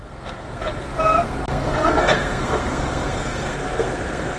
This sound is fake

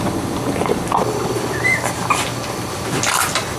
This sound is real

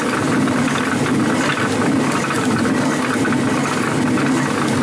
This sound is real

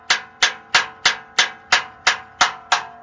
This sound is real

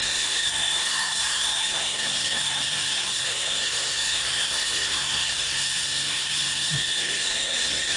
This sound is fake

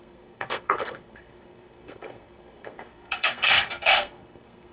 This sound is fake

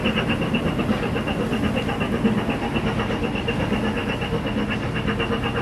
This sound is real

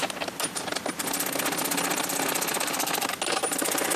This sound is real